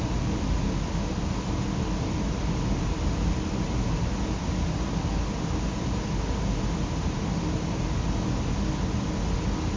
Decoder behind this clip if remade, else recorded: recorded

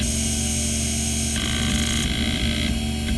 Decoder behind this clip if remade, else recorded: recorded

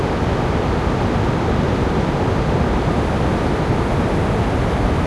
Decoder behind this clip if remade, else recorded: recorded